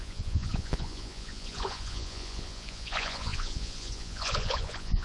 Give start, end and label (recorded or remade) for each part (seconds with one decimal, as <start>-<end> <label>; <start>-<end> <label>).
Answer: 0.0-5.0 remade